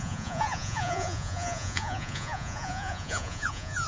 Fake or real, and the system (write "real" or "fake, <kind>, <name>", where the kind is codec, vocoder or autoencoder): fake, vocoder, Vocos